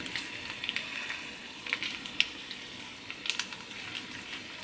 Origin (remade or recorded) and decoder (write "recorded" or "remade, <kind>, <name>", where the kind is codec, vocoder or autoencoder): recorded